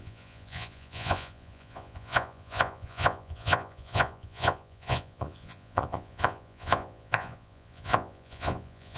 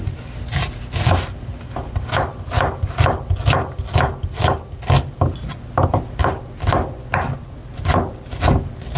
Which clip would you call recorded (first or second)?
second